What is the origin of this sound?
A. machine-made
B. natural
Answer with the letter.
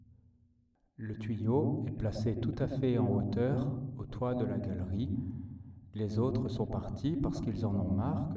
B